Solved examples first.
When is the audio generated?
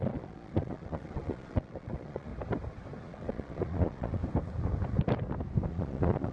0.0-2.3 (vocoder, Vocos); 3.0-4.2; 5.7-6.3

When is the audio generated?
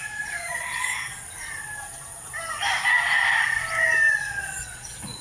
0.0-1.1 (vocoder, Vocos); 4.2-5.2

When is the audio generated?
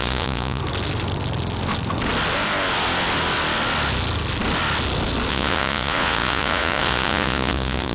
0.0-0.6 (vocoder, Vocos); 5.3-7.9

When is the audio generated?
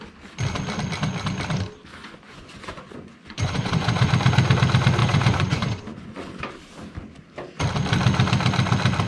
2.0-4.1 (vocoder, Vocos); 5.0-6.4